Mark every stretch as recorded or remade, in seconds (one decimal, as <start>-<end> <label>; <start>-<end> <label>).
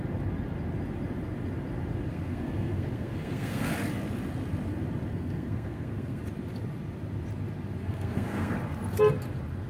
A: 0.0-2.1 recorded; 2.1-3.7 remade; 3.7-5.1 recorded; 5.1-6.2 remade; 6.2-7.8 recorded; 7.8-8.5 remade; 8.5-9.7 recorded